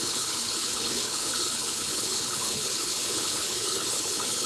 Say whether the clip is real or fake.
fake